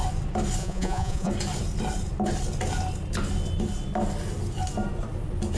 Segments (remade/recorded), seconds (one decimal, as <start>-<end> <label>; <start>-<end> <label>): 0.0-0.6 recorded; 0.6-1.3 remade; 1.3-5.6 recorded